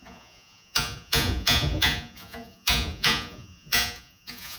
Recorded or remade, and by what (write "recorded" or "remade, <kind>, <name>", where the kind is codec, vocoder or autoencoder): remade, vocoder, Vocos